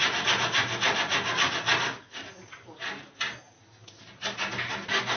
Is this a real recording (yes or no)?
yes